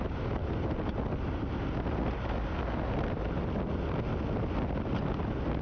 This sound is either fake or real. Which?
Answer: real